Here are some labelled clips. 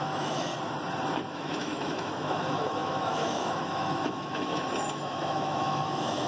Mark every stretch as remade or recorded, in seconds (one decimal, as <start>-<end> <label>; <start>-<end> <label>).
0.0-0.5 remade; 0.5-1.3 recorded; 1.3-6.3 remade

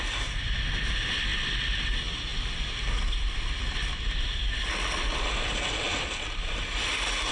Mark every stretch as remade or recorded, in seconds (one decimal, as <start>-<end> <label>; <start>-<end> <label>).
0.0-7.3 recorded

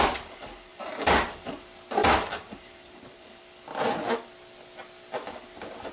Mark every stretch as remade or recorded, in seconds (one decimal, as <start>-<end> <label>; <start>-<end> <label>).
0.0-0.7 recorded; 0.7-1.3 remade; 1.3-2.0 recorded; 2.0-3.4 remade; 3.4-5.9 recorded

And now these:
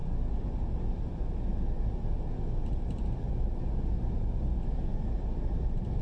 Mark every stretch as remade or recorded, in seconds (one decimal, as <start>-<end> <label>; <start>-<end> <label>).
0.0-6.0 recorded

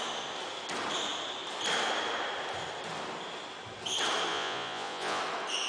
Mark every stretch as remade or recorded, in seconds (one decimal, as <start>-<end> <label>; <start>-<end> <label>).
0.0-4.3 recorded; 4.3-5.2 remade; 5.2-5.7 recorded